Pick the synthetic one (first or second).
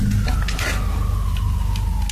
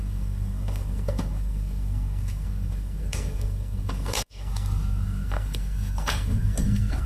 second